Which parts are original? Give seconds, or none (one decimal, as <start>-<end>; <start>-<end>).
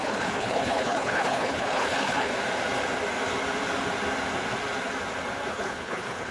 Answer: 2.3-5.5